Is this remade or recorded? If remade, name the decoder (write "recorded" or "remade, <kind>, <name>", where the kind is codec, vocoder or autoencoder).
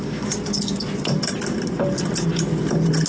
recorded